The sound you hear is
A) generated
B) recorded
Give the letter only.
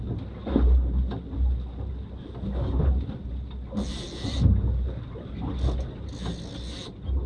B